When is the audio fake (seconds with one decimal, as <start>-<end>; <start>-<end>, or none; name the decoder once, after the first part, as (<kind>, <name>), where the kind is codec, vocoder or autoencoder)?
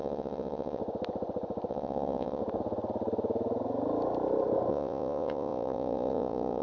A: 0.0-0.8 (vocoder, Vocos); 1.7-2.4; 4.7-6.6